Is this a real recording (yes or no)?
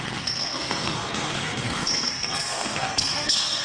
no